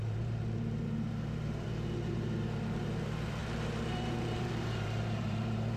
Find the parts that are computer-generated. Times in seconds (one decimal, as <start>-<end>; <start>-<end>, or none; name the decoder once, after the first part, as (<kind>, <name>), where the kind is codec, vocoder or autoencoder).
0.0-5.8 (vocoder, BigVGAN v2)